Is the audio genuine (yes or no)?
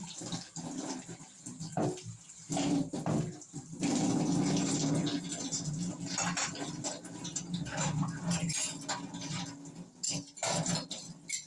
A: yes